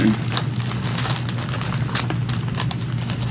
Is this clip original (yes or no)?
yes